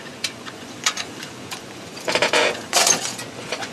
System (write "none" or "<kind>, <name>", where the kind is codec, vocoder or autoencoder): vocoder, Vocos